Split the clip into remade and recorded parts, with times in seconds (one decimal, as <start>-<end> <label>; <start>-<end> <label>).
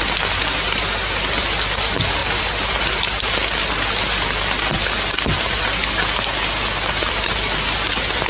0.0-8.3 recorded